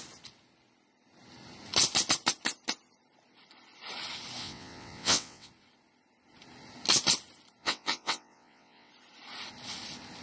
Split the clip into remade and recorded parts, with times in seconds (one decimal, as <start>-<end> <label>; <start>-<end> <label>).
0.0-4.4 recorded; 4.4-5.5 remade; 5.5-7.6 recorded; 7.6-8.9 remade; 8.9-10.2 recorded